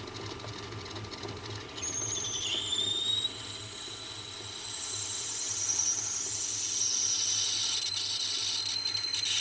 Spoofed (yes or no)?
no